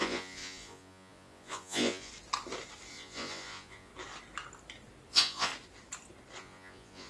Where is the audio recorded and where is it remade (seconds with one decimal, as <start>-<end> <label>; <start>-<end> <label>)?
0.0-2.1 remade; 2.1-2.9 recorded; 2.9-3.9 remade; 3.9-5.1 recorded; 5.1-5.5 remade; 5.5-6.4 recorded; 6.4-7.1 remade